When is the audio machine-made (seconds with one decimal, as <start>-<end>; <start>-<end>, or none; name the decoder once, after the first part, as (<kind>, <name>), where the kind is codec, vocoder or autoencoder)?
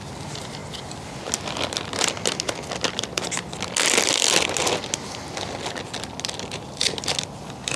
none